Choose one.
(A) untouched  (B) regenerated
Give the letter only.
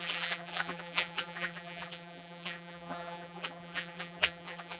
B